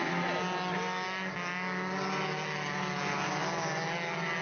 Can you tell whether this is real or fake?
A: real